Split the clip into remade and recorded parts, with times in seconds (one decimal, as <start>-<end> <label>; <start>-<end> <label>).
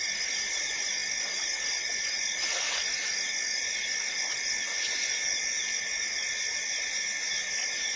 0.0-8.0 recorded